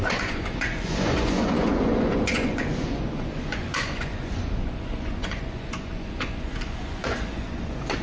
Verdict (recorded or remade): remade